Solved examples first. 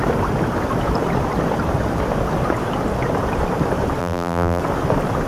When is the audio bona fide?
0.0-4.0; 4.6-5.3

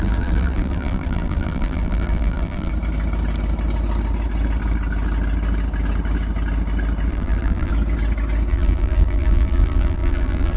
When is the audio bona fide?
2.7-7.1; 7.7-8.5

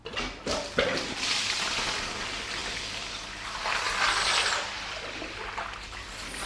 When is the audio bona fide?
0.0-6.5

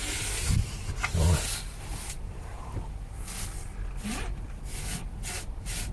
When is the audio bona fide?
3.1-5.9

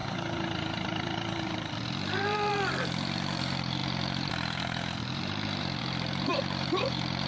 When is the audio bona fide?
none

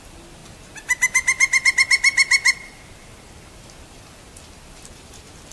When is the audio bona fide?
0.0-5.5